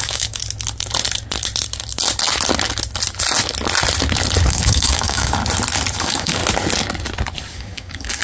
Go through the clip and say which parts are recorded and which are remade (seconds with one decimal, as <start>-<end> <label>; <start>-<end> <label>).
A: 0.0-0.4 remade; 0.4-4.5 recorded; 4.5-5.4 remade; 5.4-6.0 recorded; 6.0-6.4 remade; 6.4-7.5 recorded; 7.5-8.2 remade